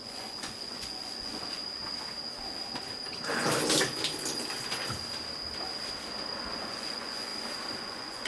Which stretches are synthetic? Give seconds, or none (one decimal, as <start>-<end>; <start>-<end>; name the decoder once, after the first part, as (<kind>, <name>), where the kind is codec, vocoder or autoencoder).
0.0-1.6 (vocoder, Vocos); 6.5-7.3; 7.8-8.3